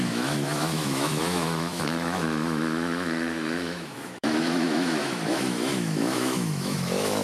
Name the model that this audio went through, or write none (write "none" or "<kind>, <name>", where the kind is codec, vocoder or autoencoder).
autoencoder, DAC-VAE